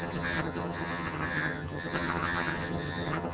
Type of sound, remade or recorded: remade